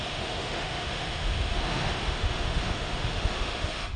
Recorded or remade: remade